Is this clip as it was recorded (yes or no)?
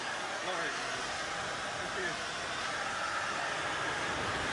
yes